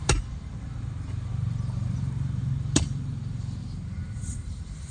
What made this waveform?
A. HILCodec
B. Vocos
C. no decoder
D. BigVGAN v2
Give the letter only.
D